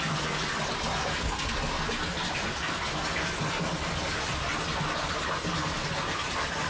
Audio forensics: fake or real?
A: real